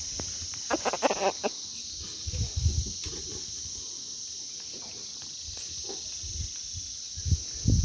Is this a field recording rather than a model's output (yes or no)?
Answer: yes